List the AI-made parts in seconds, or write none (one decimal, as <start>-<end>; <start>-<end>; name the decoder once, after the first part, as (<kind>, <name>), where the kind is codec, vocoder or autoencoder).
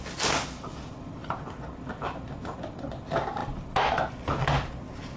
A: none